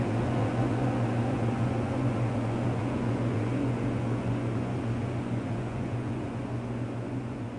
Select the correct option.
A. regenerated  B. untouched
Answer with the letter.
A